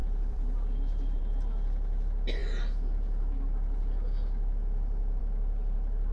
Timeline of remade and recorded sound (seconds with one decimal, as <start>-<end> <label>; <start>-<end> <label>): 0.0-1.2 remade; 1.2-6.1 recorded